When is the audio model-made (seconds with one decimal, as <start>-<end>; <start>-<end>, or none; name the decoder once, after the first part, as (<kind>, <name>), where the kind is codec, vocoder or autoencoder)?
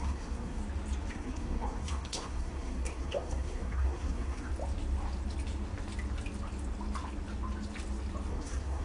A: 0.0-0.6 (codec, SNAC); 1.1-4.5; 8.3-8.8